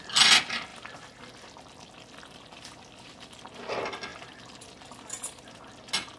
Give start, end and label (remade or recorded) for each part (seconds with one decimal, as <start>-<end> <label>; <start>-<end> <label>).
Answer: 0.0-0.7 recorded; 0.7-3.4 remade; 3.4-4.1 recorded; 4.1-5.5 remade; 5.5-6.2 recorded